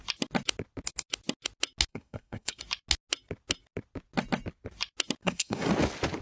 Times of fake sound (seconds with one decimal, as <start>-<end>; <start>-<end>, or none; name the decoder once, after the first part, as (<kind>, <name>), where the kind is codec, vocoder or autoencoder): 1.9-2.6 (codec, SNAC); 5.2-5.7